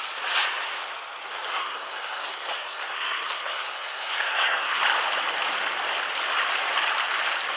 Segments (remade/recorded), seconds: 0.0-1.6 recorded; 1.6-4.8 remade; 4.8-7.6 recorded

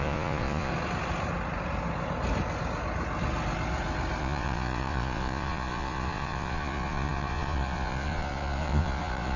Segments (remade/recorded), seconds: 0.0-0.7 remade; 0.7-4.2 recorded; 4.2-9.4 remade

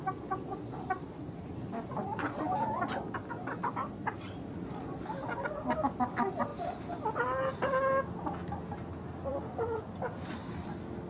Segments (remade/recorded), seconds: 0.0-11.1 recorded